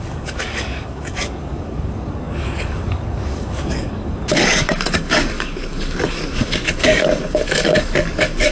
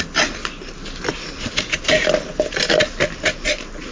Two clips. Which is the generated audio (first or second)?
first